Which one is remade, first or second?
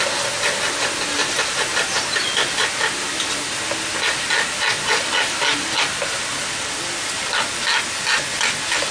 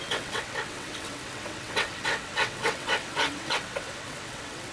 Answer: second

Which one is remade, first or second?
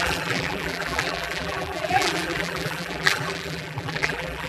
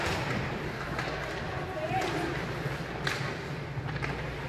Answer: first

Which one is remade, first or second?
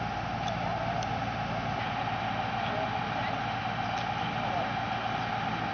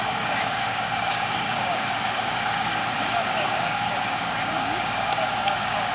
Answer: second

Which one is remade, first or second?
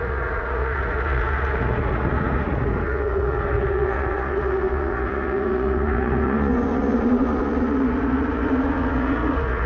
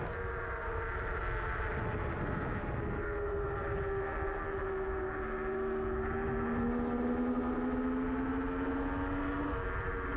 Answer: first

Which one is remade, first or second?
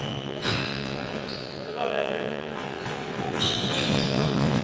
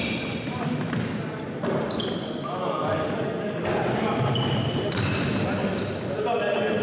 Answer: first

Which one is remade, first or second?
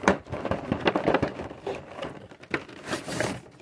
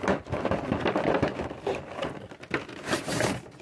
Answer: first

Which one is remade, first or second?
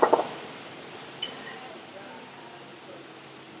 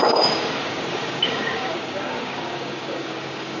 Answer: second